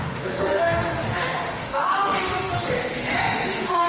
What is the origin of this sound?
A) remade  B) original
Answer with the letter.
A